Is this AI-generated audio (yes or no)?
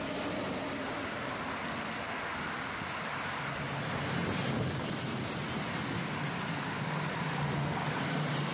no